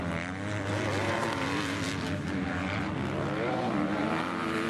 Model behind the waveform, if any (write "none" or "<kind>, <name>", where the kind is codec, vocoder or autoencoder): none